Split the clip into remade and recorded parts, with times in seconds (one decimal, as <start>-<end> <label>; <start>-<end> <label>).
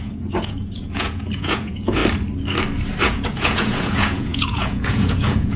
0.0-2.0 remade; 2.0-3.0 recorded; 3.0-5.6 remade